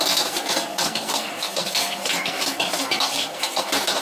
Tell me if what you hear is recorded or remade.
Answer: remade